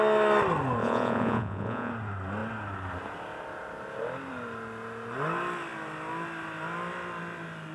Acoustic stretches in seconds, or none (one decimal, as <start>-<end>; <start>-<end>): 0.0-0.8; 1.9-7.7